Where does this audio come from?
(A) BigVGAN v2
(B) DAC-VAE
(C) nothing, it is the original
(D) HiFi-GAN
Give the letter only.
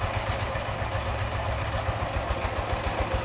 C